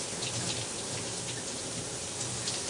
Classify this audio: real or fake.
real